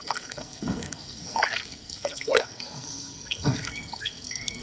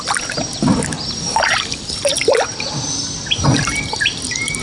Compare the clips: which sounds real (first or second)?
second